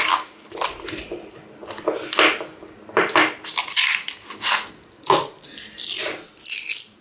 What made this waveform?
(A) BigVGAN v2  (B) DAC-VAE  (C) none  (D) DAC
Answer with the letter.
C